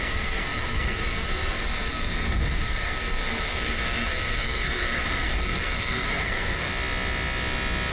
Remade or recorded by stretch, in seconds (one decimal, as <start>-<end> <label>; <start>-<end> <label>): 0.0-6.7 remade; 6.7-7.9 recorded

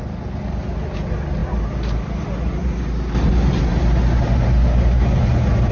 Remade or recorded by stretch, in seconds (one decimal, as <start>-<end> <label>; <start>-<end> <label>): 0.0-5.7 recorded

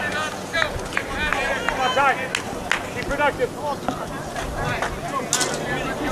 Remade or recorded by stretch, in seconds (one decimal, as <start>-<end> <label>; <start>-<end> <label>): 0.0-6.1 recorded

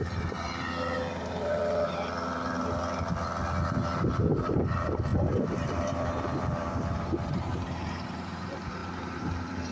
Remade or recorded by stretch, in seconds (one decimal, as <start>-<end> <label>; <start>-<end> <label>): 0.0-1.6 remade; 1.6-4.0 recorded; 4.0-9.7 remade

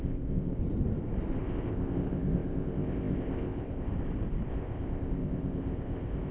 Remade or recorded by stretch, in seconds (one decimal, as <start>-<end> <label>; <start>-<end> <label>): 0.0-0.6 remade; 0.6-1.4 recorded; 1.4-3.9 remade; 3.9-4.5 recorded; 4.5-6.3 remade

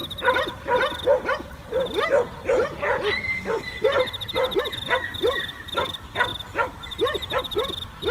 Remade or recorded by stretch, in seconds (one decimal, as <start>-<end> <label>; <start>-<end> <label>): 0.0-4.6 recorded; 4.6-6.3 remade; 6.3-7.4 recorded; 7.4-8.1 remade

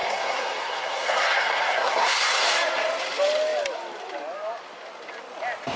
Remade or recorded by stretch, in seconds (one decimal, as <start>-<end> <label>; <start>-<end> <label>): 0.0-2.2 remade; 2.2-5.8 recorded

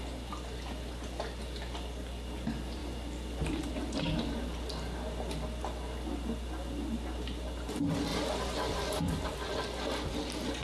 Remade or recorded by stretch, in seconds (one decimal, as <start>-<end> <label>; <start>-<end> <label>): 0.0-10.6 recorded